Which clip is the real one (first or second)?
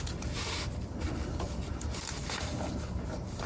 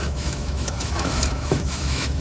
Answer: first